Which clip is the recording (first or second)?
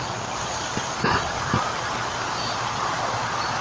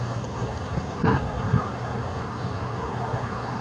first